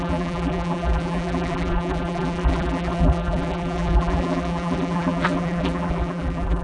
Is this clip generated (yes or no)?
yes